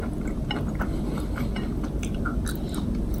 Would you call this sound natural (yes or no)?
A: yes